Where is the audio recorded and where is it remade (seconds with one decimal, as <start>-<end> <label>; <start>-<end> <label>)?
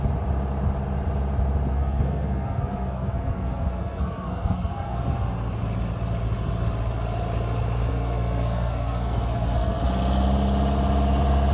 0.0-1.7 recorded; 1.7-5.0 remade; 5.0-7.9 recorded; 7.9-9.8 remade; 9.8-11.5 recorded